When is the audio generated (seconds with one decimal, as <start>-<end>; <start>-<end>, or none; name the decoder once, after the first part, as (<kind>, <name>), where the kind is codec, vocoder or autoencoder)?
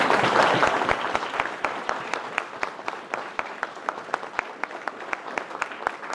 0.6-3.5 (vocoder, BigVGAN v2)